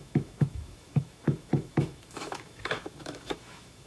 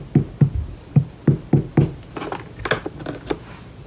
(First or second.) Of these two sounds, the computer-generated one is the first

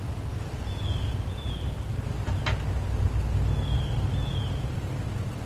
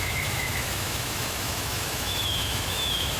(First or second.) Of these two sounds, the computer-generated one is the second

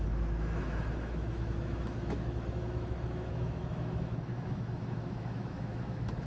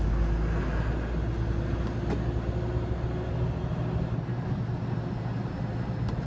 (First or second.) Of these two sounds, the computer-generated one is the first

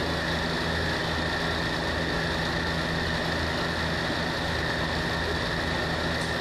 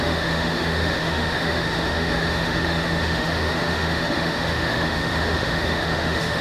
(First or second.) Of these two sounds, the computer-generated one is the second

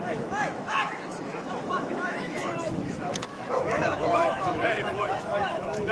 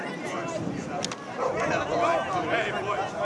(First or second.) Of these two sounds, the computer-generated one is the first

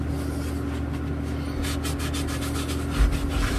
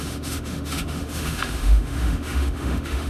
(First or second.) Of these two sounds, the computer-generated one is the second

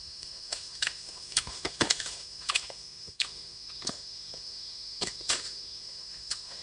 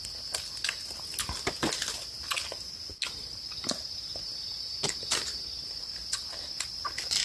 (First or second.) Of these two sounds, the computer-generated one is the first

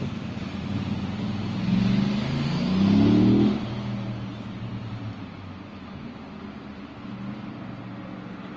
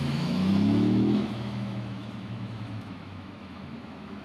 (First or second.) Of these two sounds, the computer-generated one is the second